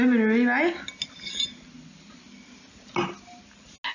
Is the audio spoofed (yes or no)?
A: no